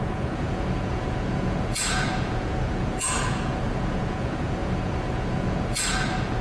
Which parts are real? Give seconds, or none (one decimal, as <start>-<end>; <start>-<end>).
none